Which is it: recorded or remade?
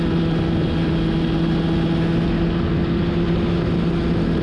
recorded